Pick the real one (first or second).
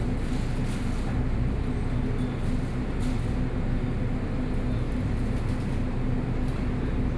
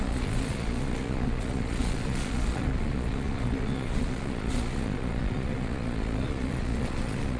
first